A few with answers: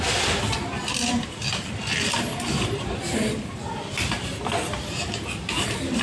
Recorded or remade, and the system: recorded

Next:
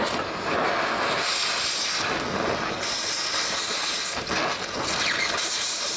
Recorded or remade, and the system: recorded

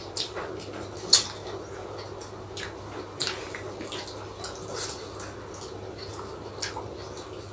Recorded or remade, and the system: recorded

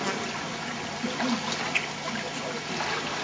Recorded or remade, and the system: recorded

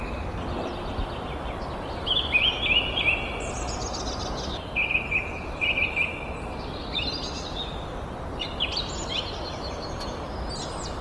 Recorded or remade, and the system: recorded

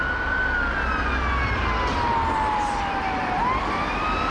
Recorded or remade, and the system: recorded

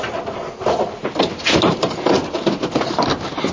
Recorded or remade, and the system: recorded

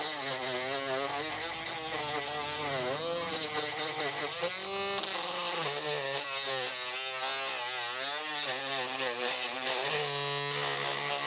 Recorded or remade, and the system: recorded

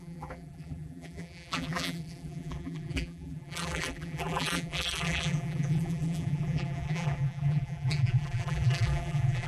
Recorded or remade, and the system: remade, vocoder, BigVGAN v2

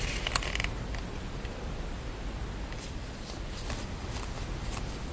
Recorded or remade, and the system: recorded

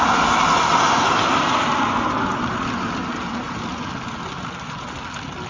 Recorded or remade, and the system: recorded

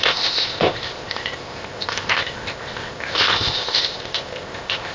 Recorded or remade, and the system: remade, codec, ZipCodec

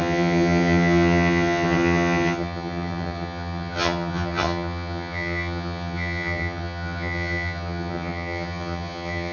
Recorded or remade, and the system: remade, vocoder, HiFi-GAN